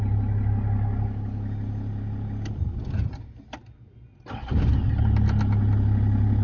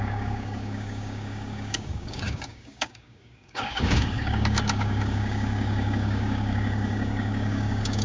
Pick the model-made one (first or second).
second